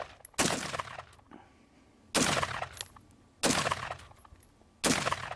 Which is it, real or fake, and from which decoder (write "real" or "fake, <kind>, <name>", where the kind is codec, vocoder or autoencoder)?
real